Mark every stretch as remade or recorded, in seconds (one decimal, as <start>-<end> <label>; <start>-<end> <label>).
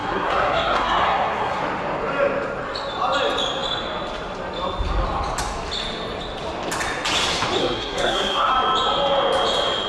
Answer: 0.0-1.6 remade; 1.6-7.6 recorded; 7.6-8.5 remade; 8.5-9.9 recorded